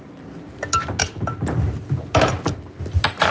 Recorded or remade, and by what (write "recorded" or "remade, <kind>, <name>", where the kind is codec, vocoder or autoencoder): recorded